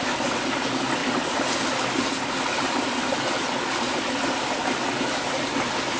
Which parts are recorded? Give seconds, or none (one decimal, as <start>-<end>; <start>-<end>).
0.0-6.0